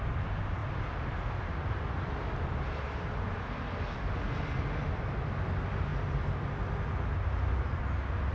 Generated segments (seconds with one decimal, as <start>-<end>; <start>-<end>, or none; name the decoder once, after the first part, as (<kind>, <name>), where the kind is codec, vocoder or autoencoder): none